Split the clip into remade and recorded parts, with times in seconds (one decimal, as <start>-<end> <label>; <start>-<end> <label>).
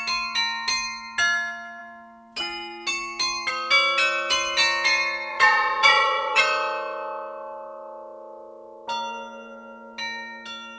0.0-5.3 recorded; 5.3-6.4 remade; 6.4-10.8 recorded